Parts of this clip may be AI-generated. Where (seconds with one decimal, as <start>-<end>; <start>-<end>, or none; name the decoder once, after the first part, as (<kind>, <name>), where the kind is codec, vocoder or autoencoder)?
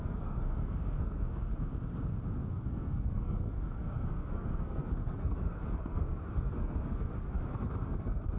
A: 0.0-1.5 (codec, SNAC); 2.5-8.4